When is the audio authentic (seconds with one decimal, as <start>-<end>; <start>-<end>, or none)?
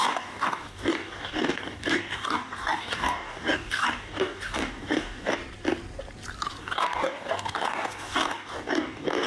5.4-6.6